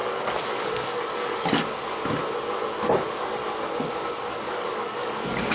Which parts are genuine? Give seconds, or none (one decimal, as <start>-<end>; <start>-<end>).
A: 1.6-4.2